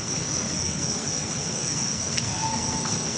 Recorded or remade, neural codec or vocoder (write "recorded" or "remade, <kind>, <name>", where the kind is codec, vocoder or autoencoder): remade, codec, SNAC